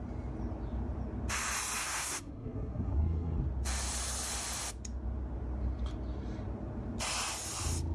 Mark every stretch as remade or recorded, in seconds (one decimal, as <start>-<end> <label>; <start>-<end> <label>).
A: 0.0-1.8 recorded; 1.8-3.4 remade; 3.4-7.9 recorded